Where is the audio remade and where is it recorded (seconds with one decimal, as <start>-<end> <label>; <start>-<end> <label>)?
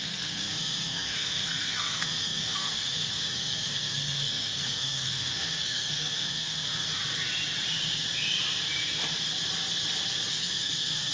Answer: 0.0-7.0 remade; 7.0-10.3 recorded; 10.3-11.1 remade